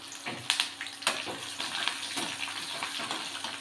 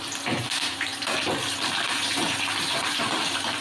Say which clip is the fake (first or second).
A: second